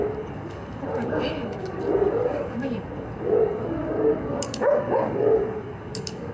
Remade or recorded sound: remade